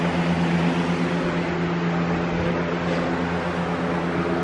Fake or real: real